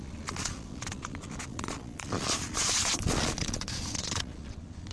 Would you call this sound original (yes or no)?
no